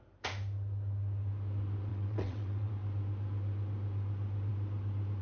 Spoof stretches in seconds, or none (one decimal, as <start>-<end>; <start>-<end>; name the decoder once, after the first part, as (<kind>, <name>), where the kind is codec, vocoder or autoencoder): 1.9-2.7 (vocoder, WaveNeXt)